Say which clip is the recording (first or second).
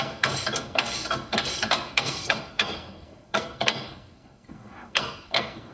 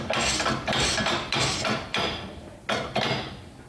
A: second